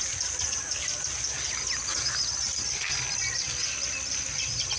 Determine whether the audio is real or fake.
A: real